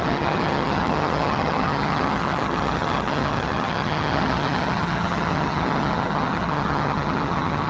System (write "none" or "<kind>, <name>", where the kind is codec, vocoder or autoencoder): vocoder, HiFi-GAN